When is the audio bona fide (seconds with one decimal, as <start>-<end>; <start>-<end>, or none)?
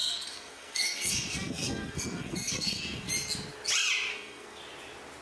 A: 3.1-4.1; 4.6-5.2